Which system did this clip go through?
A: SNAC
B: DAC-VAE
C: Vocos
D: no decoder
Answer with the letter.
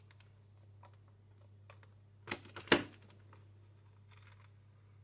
D